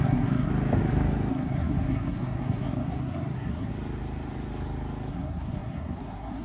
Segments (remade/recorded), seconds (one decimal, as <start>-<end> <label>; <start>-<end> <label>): 0.0-0.5 remade; 0.5-1.3 recorded; 1.3-3.7 remade; 3.7-5.1 recorded; 5.1-6.4 remade